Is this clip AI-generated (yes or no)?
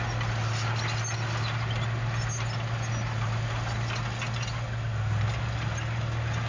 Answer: no